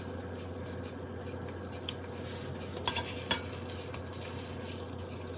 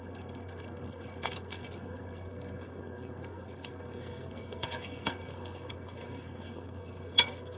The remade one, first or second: second